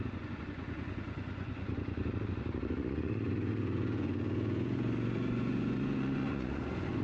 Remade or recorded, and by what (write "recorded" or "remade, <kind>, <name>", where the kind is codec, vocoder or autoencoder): remade, vocoder, Vocos